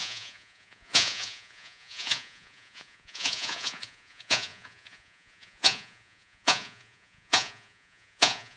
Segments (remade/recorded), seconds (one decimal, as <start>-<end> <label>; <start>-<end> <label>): 0.0-8.6 remade